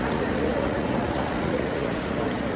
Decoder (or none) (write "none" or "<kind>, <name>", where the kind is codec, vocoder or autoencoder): vocoder, Vocos